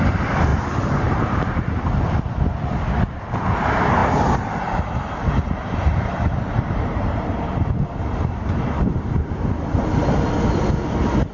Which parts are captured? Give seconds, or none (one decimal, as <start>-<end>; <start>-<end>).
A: 0.0-0.5; 1.8-4.0; 9.3-11.3